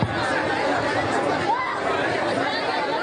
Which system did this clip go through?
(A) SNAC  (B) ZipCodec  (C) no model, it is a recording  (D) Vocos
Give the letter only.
C